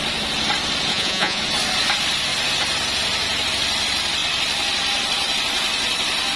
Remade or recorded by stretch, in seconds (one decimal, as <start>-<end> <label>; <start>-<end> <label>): 0.0-0.9 recorded; 0.9-1.4 remade; 1.4-6.4 recorded